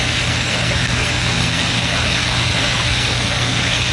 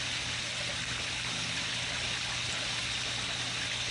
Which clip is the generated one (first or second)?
first